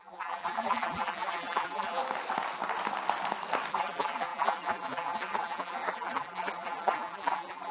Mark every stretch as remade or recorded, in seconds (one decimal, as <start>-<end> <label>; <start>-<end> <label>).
0.0-2.0 remade; 2.0-3.7 recorded; 3.7-7.7 remade